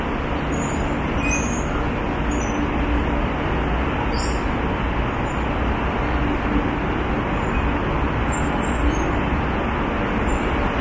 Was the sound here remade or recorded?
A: recorded